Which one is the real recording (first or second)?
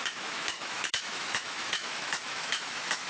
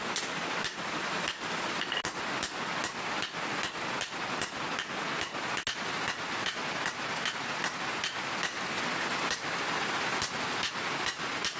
second